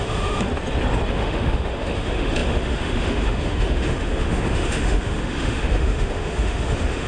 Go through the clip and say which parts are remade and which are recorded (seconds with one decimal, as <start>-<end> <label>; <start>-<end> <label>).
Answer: 0.0-0.5 remade; 0.5-1.1 recorded; 1.1-7.1 remade